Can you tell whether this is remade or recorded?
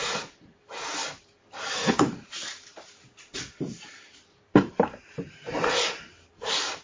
remade